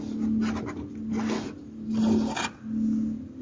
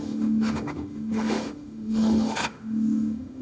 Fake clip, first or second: second